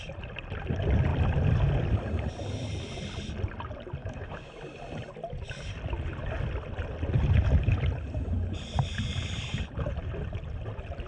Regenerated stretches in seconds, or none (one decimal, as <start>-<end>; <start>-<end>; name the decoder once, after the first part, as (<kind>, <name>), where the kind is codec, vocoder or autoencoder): 4.0-4.5 (autoencoder, DAC-VAE)